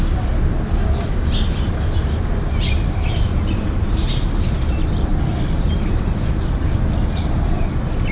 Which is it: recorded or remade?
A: recorded